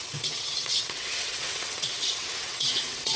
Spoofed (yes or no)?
yes